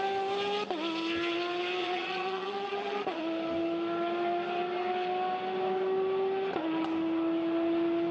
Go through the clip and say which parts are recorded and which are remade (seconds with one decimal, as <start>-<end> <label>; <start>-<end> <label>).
0.0-1.8 recorded; 1.8-3.2 remade; 3.2-8.1 recorded